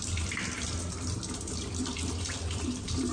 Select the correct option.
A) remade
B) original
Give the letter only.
A